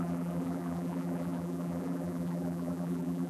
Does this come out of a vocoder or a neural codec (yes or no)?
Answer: yes